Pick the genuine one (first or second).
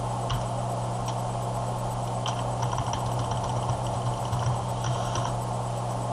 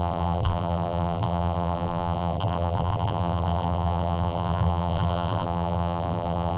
first